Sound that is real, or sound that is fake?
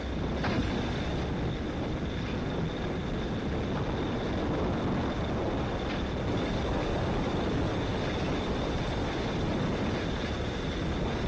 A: real